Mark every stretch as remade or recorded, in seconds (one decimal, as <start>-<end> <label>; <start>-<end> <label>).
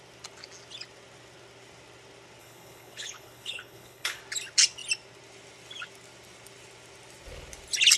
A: 0.0-2.4 recorded; 2.4-4.2 remade; 4.2-8.0 recorded